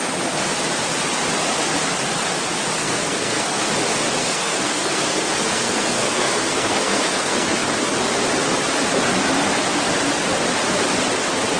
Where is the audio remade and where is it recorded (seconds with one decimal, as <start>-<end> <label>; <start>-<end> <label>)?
0.0-2.8 recorded; 2.8-3.7 remade; 3.7-4.2 recorded; 4.2-7.7 remade; 7.7-11.6 recorded